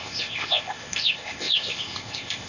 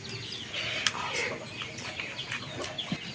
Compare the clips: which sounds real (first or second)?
second